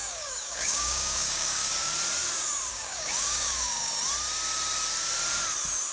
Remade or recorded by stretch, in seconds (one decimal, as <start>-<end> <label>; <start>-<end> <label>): 0.0-1.9 remade; 1.9-2.7 recorded; 2.7-3.9 remade; 3.9-5.9 recorded